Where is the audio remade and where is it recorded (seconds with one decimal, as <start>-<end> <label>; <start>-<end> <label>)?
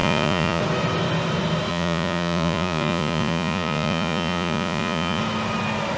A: 0.0-0.6 remade; 0.6-1.7 recorded; 1.7-5.2 remade; 5.2-6.0 recorded